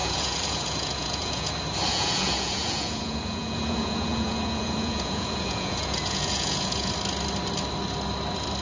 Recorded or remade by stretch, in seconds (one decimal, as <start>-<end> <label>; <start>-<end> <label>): 0.0-1.5 remade; 1.5-1.9 recorded; 1.9-6.9 remade; 6.9-8.6 recorded